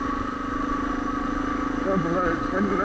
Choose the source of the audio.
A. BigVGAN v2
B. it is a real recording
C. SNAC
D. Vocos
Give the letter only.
B